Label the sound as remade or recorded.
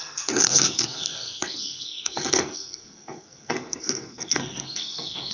remade